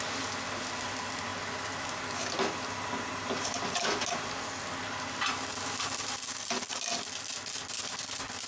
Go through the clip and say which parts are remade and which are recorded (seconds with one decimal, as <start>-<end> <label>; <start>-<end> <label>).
0.0-8.5 recorded